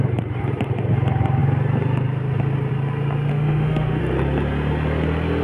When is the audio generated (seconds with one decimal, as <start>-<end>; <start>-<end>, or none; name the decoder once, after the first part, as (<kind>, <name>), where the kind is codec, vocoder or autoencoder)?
3.3-4.0 (autoencoder, DAC-VAE)